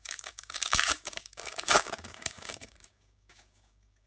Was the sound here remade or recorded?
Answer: remade